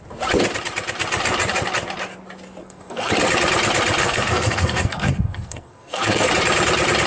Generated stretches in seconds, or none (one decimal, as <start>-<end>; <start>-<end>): 2.6-3.1; 4.0-6.3

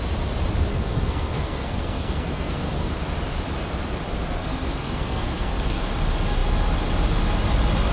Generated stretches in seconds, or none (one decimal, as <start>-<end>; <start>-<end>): 0.7-2.9; 4.4-5.8

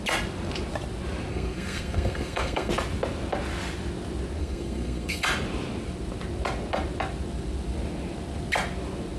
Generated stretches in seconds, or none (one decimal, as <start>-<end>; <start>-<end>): 1.3-2.7; 4.4-5.2

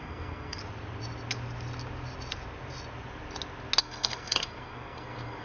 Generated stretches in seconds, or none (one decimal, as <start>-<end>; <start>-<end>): 0.0-0.6; 3.8-5.4

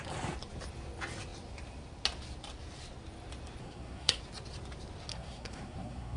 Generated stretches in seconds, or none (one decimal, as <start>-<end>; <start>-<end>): 3.6-4.2; 5.1-6.2

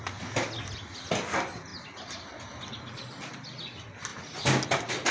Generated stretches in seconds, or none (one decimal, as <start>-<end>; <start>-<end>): none

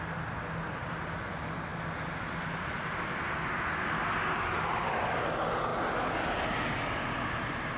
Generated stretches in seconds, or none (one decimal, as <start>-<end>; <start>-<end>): none

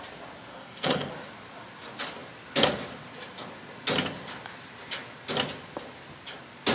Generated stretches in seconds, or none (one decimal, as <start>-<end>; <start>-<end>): 0.5-1.1